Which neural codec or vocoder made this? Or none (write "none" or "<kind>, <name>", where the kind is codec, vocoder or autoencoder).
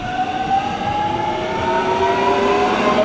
none